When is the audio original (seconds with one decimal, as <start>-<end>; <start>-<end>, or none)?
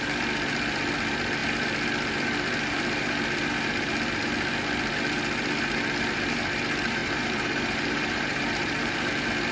0.0-7.0; 9.1-9.5